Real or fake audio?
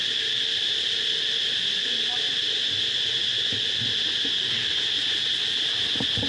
real